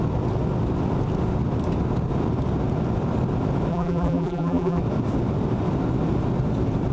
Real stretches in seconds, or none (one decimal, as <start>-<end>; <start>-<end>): 0.0-3.7; 4.8-6.9